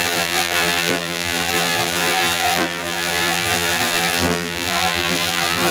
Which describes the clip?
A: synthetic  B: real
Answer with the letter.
A